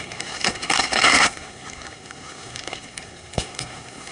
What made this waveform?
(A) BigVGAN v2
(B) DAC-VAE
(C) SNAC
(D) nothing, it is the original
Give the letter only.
C